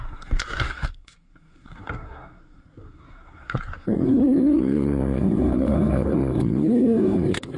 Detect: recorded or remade remade